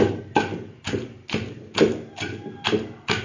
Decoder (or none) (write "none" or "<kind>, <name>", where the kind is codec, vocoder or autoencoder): none